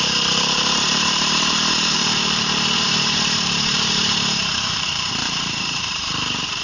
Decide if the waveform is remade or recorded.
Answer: remade